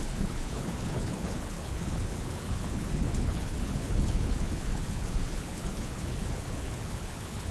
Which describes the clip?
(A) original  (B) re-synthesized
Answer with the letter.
B